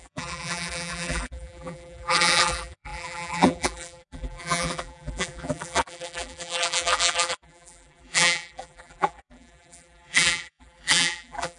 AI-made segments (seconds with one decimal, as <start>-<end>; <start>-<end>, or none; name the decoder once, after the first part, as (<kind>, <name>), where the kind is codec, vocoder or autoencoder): 0.0-11.6 (vocoder, BigVGAN v2)